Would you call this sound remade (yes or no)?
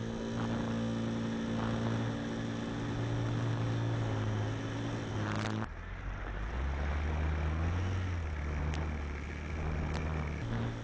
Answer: no